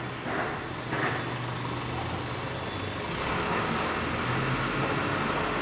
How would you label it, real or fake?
real